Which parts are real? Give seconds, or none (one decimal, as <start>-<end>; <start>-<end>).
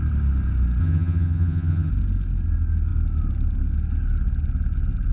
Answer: 0.0-0.8; 1.9-5.1